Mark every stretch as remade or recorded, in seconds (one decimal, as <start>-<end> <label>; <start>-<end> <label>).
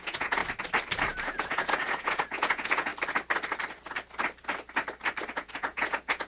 0.0-0.4 remade; 0.4-1.3 recorded; 1.3-2.9 remade; 2.9-5.4 recorded; 5.4-6.3 remade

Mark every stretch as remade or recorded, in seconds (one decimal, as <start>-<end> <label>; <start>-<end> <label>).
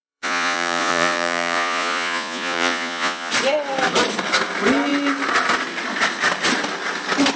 0.0-3.3 remade; 3.3-7.4 recorded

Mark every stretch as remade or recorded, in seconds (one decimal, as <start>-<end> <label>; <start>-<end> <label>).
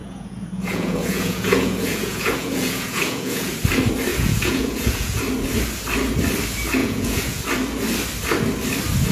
0.0-3.5 remade; 3.5-4.1 recorded; 4.1-5.2 remade; 5.2-6.8 recorded; 6.8-7.4 remade; 7.4-9.1 recorded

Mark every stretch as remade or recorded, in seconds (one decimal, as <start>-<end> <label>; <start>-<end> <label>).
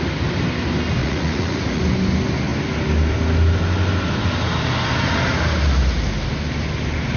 0.0-1.0 recorded; 1.0-1.8 remade; 1.8-7.2 recorded